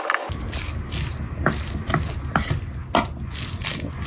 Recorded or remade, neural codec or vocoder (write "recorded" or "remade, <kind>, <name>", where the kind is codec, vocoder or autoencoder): recorded